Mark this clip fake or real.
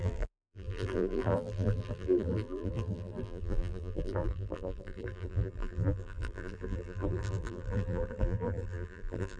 fake